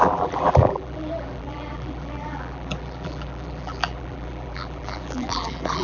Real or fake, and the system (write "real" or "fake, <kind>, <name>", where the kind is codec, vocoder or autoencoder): fake, vocoder, BigVGAN v2